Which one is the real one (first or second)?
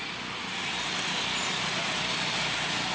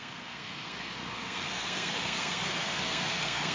first